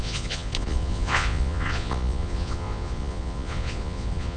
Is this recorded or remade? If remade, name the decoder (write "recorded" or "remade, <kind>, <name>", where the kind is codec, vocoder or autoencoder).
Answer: remade, vocoder, Vocos